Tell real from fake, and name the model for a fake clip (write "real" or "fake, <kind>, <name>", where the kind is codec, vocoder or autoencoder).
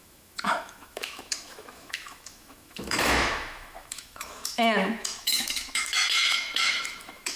fake, autoencoder, DAC-VAE